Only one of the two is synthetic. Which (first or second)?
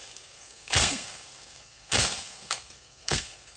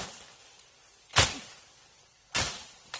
first